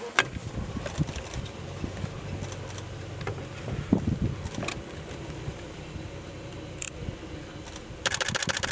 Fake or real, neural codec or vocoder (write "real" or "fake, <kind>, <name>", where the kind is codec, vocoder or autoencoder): real